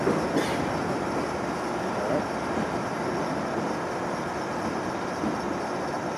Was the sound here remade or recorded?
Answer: recorded